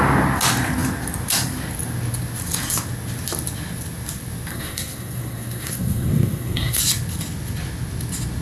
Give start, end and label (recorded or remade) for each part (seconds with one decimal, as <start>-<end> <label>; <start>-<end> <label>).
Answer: 0.0-4.5 recorded; 4.5-6.8 remade; 6.8-8.4 recorded